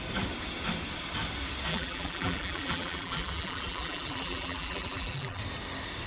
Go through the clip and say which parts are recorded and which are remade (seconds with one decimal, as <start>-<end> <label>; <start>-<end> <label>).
0.0-1.7 recorded; 1.7-5.4 remade; 5.4-6.1 recorded